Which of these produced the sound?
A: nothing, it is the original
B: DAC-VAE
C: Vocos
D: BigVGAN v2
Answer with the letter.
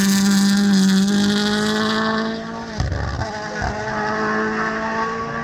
A